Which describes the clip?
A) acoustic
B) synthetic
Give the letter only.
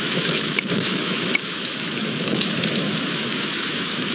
B